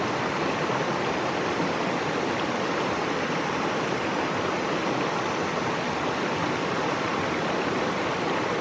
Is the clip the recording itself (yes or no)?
yes